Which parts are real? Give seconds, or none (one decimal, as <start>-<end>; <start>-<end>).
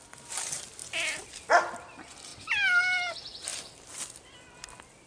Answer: 0.0-5.1